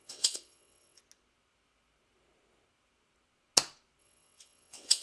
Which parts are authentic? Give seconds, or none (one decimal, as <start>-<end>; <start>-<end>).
1.0-4.0